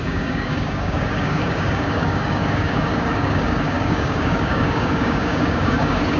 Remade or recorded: remade